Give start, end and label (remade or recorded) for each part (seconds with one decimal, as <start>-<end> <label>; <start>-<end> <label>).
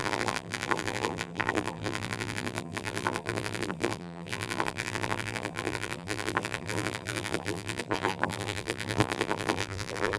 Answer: 0.0-10.2 remade